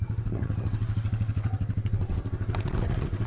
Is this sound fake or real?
fake